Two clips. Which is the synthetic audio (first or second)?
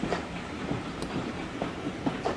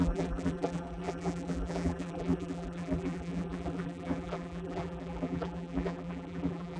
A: second